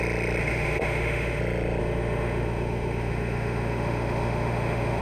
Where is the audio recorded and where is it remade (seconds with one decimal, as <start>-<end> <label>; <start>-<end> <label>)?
0.0-0.4 recorded; 0.4-1.4 remade; 1.4-1.8 recorded; 1.8-5.0 remade